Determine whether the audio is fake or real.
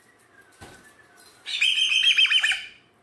real